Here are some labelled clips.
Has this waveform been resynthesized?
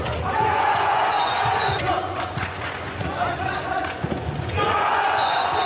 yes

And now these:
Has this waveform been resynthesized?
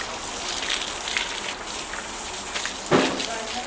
no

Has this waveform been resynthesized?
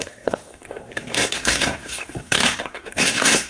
yes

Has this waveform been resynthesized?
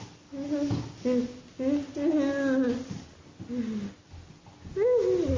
no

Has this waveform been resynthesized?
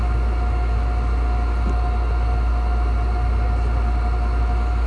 no